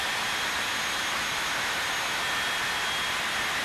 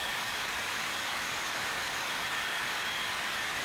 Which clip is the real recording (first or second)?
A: first